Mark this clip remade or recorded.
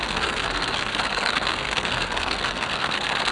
remade